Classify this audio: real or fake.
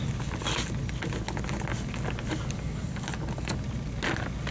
real